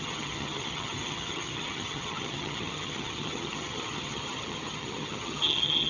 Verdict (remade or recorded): remade